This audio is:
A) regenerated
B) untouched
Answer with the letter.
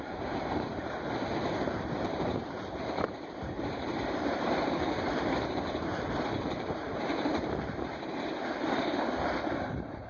A